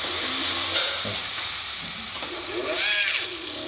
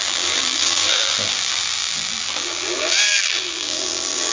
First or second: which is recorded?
first